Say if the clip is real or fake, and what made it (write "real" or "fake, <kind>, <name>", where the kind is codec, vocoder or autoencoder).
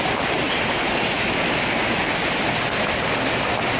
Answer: real